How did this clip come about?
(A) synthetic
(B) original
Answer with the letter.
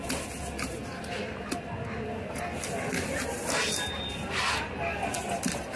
B